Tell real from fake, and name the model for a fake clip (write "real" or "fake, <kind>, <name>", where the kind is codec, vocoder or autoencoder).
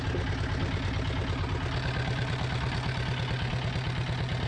real